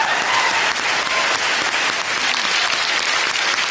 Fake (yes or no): no